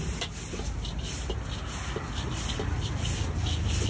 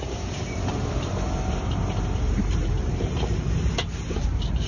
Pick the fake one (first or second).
second